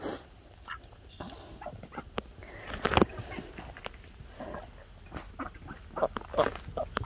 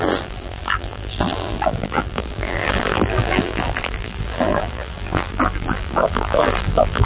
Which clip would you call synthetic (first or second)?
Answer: second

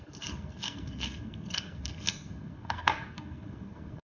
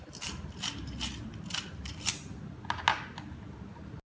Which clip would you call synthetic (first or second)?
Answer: first